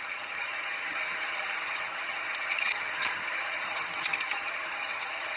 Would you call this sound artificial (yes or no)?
yes